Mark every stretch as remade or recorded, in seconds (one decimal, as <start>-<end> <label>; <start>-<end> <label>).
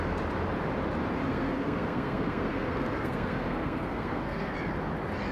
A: 0.0-1.3 recorded; 1.3-4.5 remade; 4.5-5.3 recorded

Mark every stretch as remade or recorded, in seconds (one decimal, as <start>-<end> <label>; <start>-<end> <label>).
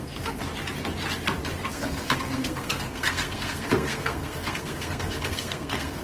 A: 0.0-0.5 remade; 0.5-1.7 recorded; 1.7-6.0 remade